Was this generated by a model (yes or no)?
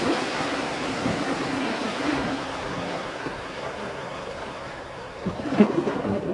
yes